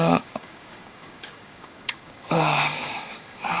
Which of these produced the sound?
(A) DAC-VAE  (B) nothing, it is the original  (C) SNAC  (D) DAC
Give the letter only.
D